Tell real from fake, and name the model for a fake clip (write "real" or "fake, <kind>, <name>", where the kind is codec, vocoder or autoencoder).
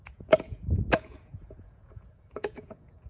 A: fake, vocoder, Vocos